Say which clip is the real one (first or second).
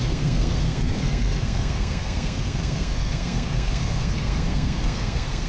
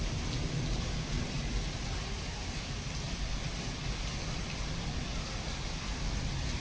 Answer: second